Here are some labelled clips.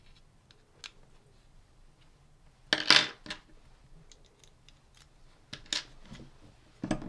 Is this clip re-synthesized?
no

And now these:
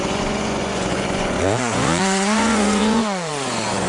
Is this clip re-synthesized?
yes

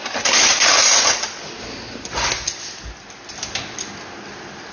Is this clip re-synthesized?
no